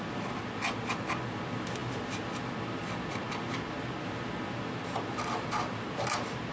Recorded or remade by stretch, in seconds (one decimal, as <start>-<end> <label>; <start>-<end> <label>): 0.0-6.5 recorded